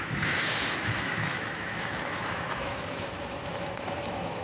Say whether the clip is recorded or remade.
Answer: remade